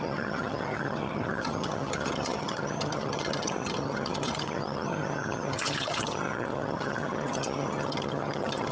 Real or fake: fake